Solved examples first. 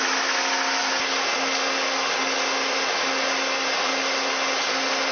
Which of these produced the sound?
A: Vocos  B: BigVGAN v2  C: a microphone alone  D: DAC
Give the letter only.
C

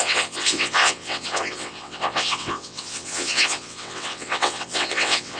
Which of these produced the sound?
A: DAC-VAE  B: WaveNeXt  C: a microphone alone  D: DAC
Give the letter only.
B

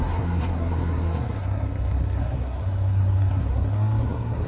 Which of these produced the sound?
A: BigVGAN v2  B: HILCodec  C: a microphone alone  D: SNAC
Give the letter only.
D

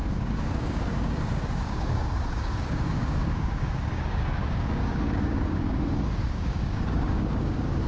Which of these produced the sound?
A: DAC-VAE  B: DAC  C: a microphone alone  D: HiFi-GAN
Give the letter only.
B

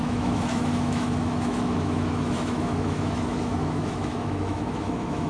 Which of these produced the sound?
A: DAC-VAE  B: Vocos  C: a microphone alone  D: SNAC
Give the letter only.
A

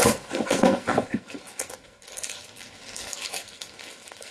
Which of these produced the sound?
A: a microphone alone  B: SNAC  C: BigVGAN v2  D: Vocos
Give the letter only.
B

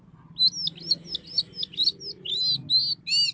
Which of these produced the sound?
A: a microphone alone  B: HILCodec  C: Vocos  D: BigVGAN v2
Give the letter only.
A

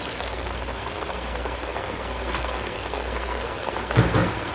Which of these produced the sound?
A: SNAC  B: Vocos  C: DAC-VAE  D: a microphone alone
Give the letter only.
A